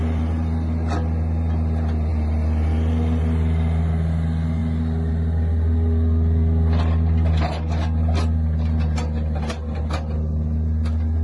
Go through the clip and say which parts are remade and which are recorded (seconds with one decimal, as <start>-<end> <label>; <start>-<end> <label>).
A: 0.0-11.2 recorded